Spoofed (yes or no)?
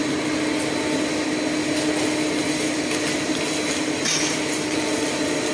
no